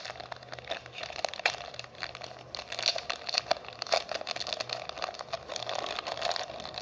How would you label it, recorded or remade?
recorded